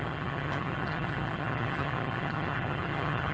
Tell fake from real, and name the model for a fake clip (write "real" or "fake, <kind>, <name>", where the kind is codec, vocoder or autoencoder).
fake, vocoder, HiFi-GAN